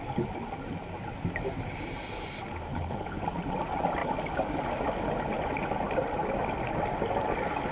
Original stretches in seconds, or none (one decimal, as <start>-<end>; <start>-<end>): 0.0-2.7; 3.2-7.7